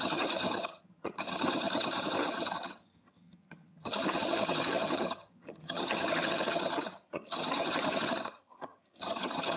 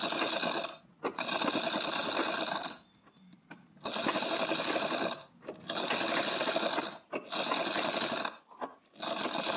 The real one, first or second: second